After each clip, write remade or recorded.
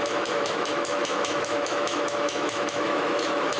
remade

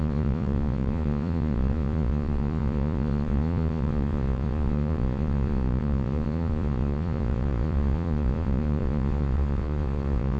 remade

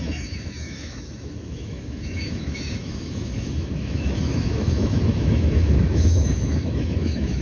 remade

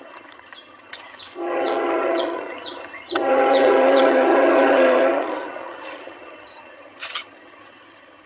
remade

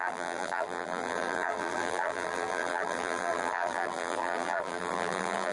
remade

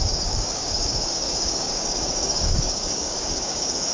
remade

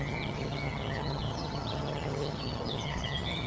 remade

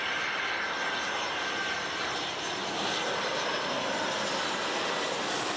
recorded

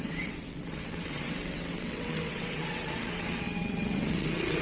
remade